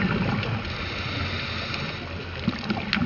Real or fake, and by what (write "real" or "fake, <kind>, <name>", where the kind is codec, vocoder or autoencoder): real